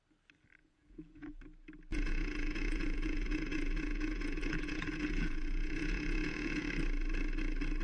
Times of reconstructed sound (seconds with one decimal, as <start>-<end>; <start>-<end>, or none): 0.6-1.4; 1.9-6.6